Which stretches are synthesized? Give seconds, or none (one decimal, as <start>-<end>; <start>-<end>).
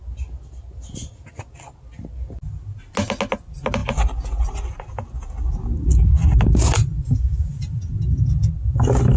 none